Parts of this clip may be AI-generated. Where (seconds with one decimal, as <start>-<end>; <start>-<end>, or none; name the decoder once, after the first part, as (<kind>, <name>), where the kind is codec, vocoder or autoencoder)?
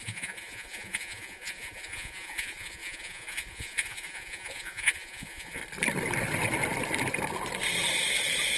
0.0-5.6 (vocoder, Vocos)